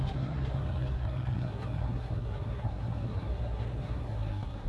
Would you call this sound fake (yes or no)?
yes